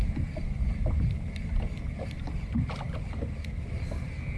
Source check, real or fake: real